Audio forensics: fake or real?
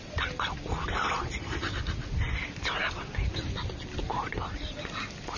real